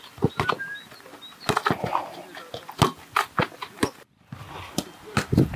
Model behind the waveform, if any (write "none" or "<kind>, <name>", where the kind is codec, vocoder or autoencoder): none